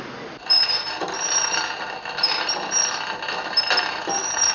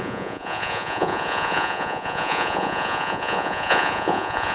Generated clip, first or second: second